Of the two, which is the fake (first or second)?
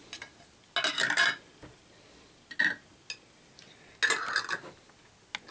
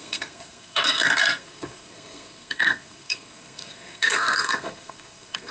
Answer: second